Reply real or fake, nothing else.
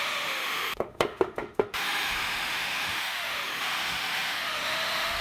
fake